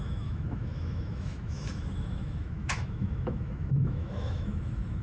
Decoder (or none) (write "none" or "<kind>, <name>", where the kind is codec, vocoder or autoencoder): autoencoder, DAC-VAE